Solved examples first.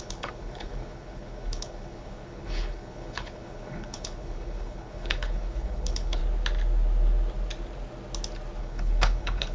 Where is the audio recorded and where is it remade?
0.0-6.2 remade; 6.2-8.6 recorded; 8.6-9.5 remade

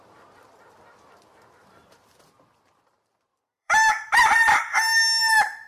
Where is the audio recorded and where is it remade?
0.0-3.3 recorded; 3.3-3.9 remade; 3.9-5.7 recorded

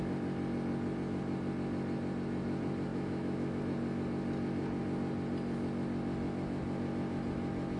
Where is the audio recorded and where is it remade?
0.0-2.9 recorded; 2.9-3.6 remade; 3.6-7.8 recorded

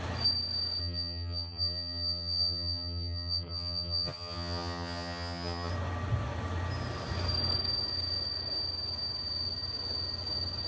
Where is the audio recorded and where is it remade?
0.0-0.8 recorded; 0.8-5.7 remade; 5.7-10.7 recorded

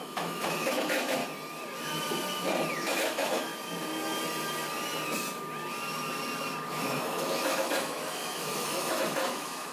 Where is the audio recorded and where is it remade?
0.0-1.2 remade; 1.2-2.7 recorded; 2.7-3.5 remade; 3.5-6.7 recorded; 6.7-9.7 remade

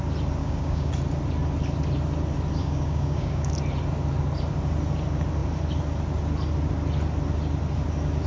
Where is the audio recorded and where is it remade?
0.0-0.4 recorded; 0.4-0.9 remade; 0.9-2.6 recorded; 2.6-3.5 remade; 3.5-8.3 recorded